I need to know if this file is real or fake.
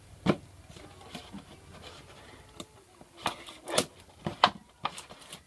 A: real